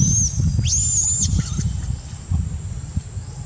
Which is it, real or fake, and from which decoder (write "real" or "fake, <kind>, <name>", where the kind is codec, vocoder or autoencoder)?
real